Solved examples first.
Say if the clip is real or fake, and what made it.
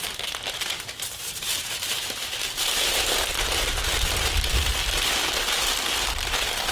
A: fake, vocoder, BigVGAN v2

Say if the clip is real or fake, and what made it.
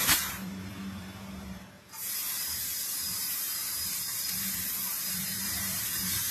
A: fake, vocoder, BigVGAN v2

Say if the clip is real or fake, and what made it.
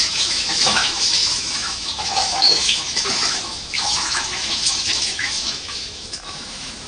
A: fake, autoencoder, DAC-VAE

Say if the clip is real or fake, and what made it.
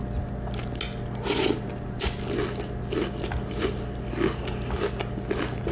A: real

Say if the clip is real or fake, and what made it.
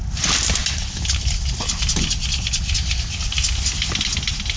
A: real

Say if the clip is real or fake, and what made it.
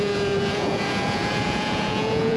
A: fake, vocoder, Vocos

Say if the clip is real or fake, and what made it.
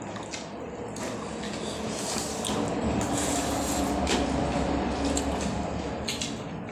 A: real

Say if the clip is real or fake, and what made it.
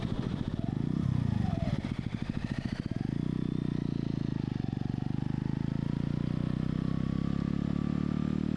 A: real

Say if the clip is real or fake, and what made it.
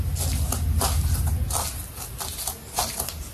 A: real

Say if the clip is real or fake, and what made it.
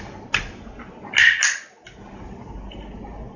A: real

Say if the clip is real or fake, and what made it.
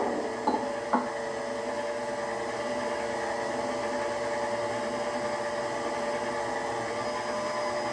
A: real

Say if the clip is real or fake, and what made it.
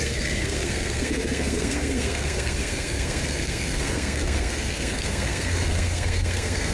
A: fake, codec, SNAC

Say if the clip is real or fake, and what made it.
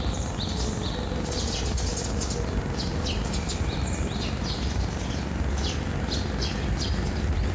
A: real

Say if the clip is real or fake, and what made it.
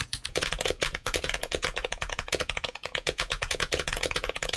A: fake, vocoder, Vocos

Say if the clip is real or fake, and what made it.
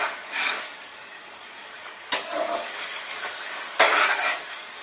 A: fake, codec, DAC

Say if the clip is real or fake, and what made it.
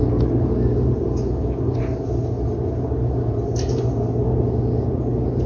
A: real